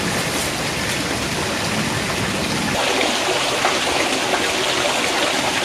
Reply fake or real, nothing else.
real